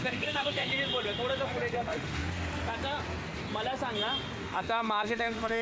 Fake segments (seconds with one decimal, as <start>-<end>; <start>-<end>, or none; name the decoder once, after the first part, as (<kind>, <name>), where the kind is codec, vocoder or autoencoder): 0.0-0.7 (autoencoder, DAC-VAE); 1.7-2.2; 4.4-5.6